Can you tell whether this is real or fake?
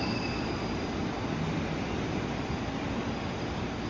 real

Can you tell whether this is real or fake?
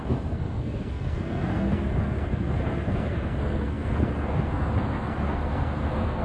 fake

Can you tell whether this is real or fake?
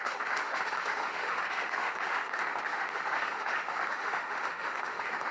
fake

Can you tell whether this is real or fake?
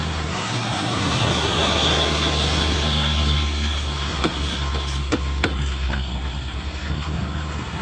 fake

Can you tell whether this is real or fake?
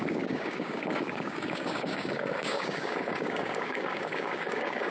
fake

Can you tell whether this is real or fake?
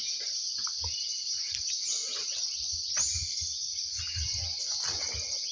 real